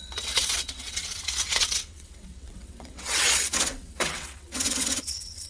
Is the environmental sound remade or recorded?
remade